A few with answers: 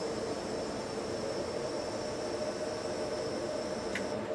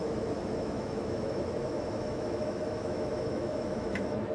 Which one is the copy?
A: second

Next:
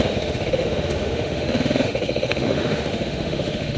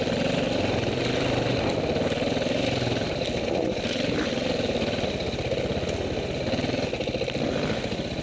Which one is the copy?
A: first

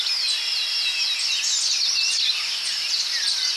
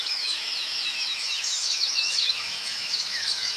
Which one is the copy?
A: second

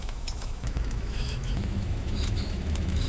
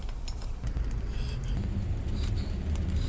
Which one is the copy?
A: first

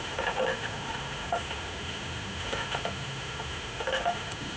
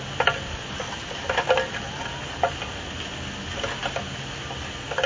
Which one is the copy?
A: first